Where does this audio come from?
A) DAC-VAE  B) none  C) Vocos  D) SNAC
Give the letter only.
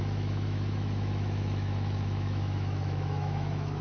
A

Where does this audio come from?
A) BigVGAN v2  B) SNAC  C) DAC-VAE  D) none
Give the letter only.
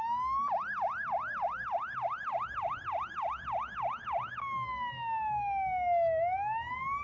D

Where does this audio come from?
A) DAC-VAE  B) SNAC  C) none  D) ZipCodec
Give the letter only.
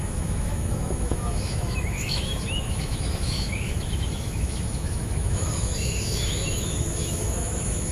A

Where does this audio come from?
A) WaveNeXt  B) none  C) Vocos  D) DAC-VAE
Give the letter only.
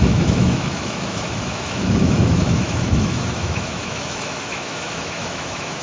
D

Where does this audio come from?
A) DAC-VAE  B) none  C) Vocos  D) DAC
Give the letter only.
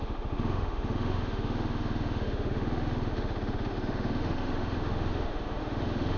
A